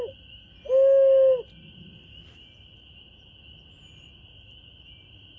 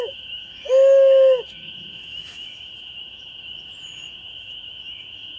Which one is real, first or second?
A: first